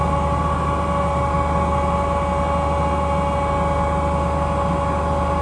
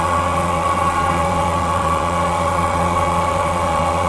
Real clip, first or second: first